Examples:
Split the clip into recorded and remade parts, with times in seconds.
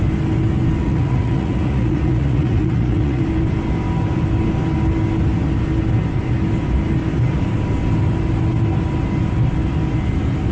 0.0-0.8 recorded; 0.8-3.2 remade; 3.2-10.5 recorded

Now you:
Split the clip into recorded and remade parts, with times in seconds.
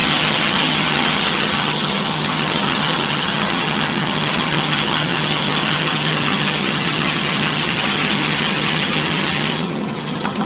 0.0-10.5 remade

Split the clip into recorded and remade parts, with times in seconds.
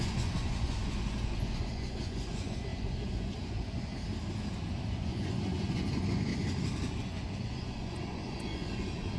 0.0-3.9 remade; 3.9-4.9 recorded; 4.9-6.3 remade; 6.3-7.0 recorded; 7.0-9.2 remade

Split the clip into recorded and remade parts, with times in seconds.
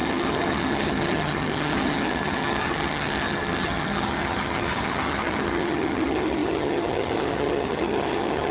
0.0-8.5 remade